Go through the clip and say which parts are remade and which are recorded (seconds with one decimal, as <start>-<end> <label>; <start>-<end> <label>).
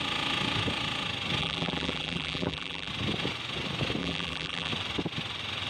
0.0-1.4 recorded; 1.4-2.9 remade; 2.9-4.0 recorded; 4.0-4.7 remade; 4.7-5.7 recorded